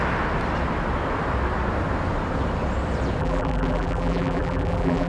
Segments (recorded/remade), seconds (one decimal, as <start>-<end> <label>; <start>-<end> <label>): 0.0-3.2 recorded; 3.2-5.1 remade

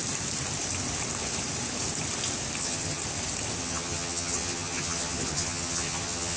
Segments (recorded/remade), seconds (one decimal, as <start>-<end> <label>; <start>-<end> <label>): 0.0-2.6 recorded; 2.6-3.0 remade; 3.0-3.6 recorded; 3.6-6.4 remade

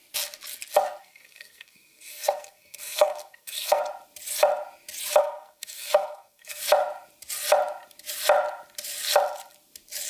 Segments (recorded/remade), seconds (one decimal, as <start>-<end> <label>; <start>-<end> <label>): 0.0-1.0 recorded; 1.0-3.8 remade; 3.8-5.2 recorded; 5.2-6.6 remade; 6.6-10.1 recorded

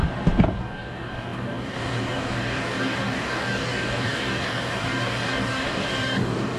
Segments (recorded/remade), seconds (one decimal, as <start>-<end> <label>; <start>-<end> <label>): 0.0-0.6 recorded; 0.6-6.6 remade

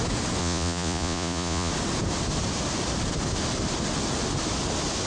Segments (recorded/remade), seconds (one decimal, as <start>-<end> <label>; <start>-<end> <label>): 0.0-0.4 recorded; 0.4-1.7 remade; 1.7-5.1 recorded

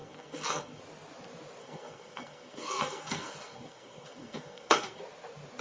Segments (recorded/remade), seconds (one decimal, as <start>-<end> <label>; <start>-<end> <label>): 0.0-0.8 remade; 0.8-1.6 recorded; 1.6-5.0 remade; 5.0-5.6 recorded